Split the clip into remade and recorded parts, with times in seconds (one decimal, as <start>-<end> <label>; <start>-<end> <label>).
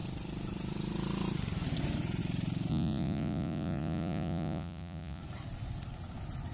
0.0-2.7 recorded; 2.7-5.2 remade; 5.2-6.5 recorded